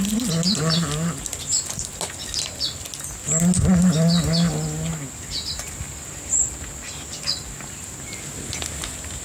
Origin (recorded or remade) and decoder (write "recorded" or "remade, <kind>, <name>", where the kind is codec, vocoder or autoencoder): recorded